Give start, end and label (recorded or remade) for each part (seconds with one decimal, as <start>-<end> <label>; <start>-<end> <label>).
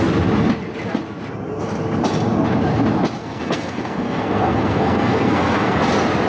0.0-3.2 recorded; 3.2-5.8 remade; 5.8-6.3 recorded